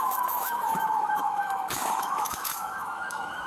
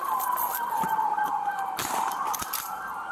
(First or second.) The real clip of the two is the second